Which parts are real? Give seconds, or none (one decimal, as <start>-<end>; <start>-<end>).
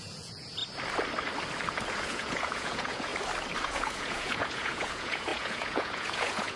0.6-1.9; 3.1-3.6